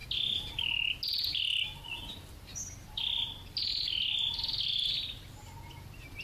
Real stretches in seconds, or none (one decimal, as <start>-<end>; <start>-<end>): 0.0-6.2